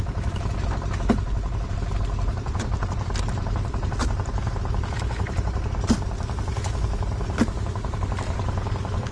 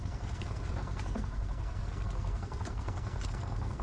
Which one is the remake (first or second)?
second